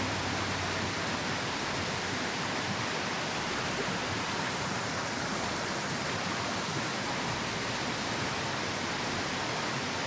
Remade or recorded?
remade